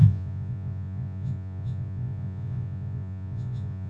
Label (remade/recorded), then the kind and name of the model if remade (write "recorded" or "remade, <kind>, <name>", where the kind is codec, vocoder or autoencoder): remade, vocoder, Vocos